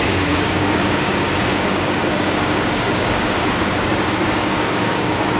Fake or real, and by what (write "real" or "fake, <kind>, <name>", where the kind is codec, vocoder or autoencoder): fake, codec, DAC